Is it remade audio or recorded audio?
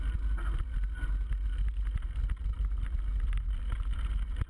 recorded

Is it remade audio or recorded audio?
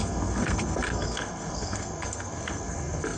remade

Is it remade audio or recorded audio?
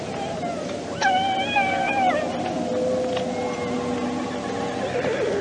recorded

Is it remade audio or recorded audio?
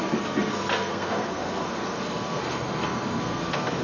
remade